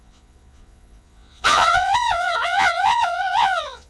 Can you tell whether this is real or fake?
fake